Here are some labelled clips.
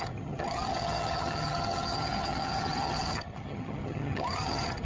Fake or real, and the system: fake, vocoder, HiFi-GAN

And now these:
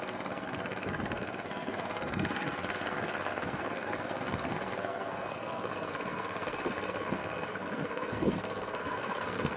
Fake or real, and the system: fake, codec, SNAC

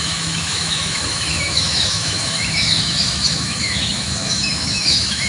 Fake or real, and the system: fake, autoencoder, DAC-VAE